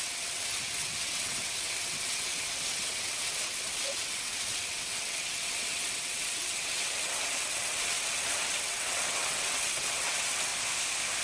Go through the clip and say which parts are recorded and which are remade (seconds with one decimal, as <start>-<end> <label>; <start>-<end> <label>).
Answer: 0.0-10.5 remade; 10.5-11.2 recorded